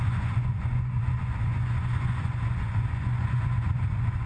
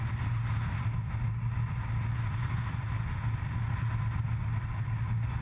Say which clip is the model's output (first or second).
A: first